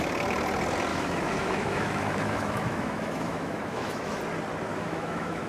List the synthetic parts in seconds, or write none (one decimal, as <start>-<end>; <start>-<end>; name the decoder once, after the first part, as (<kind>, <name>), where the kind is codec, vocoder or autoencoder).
0.9-4.2 (autoencoder, DAC-VAE); 4.7-5.5